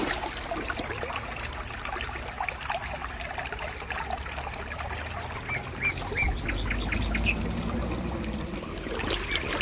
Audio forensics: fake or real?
real